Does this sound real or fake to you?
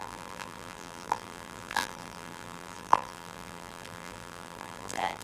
fake